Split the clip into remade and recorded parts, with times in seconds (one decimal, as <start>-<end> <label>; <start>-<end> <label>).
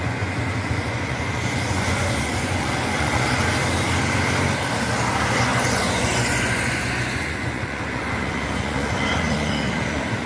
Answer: 0.0-3.4 remade; 3.4-5.1 recorded; 5.1-10.3 remade